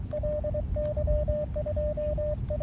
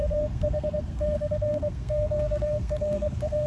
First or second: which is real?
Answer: first